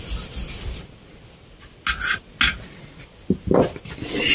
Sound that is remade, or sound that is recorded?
recorded